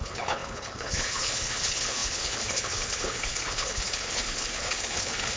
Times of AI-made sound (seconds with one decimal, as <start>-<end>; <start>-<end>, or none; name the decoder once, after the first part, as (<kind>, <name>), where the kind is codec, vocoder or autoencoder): 0.0-5.4 (codec, HILCodec)